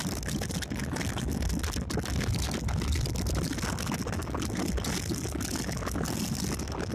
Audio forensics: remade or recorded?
recorded